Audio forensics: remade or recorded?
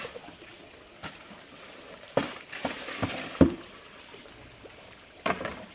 recorded